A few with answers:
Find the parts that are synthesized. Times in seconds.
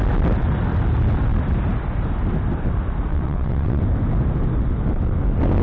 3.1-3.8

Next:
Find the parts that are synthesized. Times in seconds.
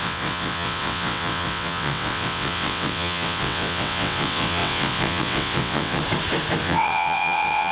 0.0-6.0; 6.6-7.7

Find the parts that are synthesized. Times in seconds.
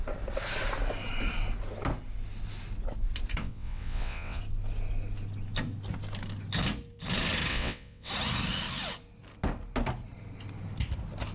3.4-4.4; 7.5-8.1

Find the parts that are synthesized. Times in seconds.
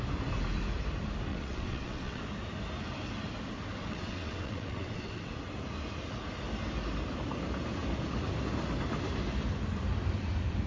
1.3-2.2; 3.8-5.3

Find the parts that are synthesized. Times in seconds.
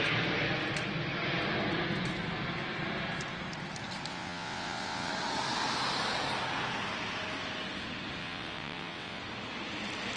4.1-5.1; 8.2-9.2